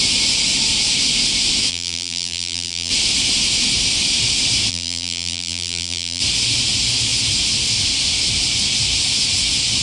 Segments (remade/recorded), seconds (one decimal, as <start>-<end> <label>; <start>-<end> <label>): 0.0-1.7 recorded; 1.7-2.9 remade; 2.9-4.7 recorded; 4.7-6.2 remade; 6.2-9.8 recorded